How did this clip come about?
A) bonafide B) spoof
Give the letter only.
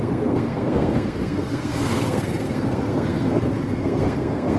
B